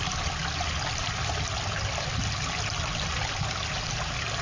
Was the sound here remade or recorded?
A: recorded